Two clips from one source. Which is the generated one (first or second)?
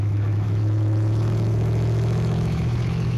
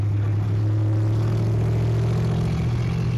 first